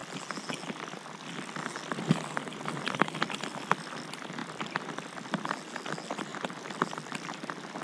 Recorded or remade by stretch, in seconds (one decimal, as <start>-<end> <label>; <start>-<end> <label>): 0.0-2.5 recorded; 2.5-3.2 remade; 3.2-4.4 recorded; 4.4-5.4 remade; 5.4-6.3 recorded; 6.3-7.8 remade